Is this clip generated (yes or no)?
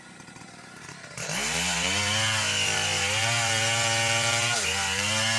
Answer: no